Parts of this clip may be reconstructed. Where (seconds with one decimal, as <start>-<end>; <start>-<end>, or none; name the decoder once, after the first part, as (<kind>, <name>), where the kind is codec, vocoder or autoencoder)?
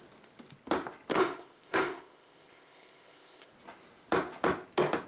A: 1.1-3.5 (codec, ZipCodec)